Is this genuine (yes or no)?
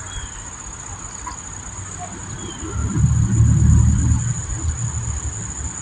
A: yes